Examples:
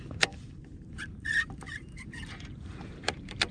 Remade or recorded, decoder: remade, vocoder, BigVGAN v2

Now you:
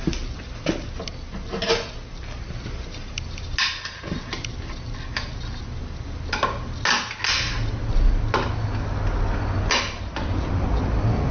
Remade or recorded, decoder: recorded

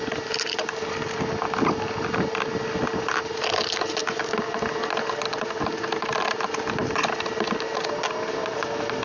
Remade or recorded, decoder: recorded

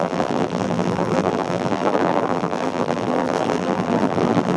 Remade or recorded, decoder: remade, vocoder, BigVGAN v2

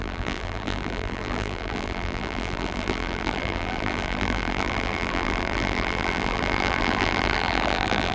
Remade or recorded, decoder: remade, vocoder, BigVGAN v2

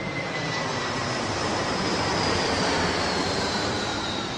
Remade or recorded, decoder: remade, vocoder, BigVGAN v2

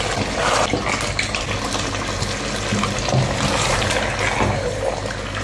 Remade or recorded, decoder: recorded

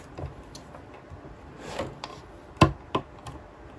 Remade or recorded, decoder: recorded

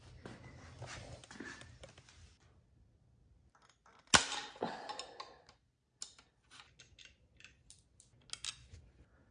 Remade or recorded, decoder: recorded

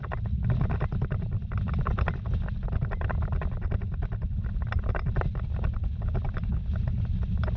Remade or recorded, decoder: recorded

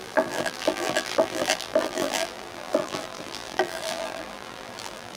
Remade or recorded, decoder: remade, vocoder, BigVGAN v2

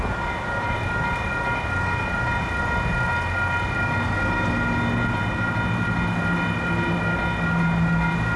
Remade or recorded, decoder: recorded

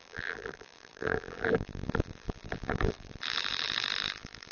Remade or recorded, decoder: remade, vocoder, BigVGAN v2